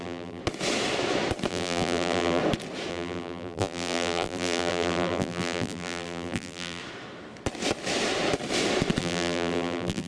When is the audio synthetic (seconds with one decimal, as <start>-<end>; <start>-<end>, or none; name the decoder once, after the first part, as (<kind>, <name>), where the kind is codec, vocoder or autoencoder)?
0.0-0.4 (vocoder, BigVGAN v2); 1.5-2.4; 2.9-6.8; 9.0-10.1